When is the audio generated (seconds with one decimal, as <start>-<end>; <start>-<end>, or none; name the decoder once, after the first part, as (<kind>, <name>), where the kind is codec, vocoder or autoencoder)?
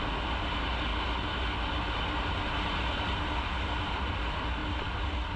none